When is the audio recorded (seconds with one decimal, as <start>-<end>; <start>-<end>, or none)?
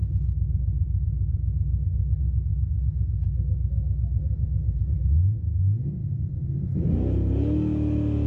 0.0-4.2; 4.9-6.0; 6.9-8.3